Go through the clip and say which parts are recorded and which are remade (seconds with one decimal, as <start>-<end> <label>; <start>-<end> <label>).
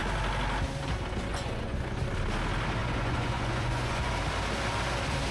0.0-1.3 recorded; 1.3-2.0 remade; 2.0-2.8 recorded; 2.8-4.1 remade; 4.1-5.3 recorded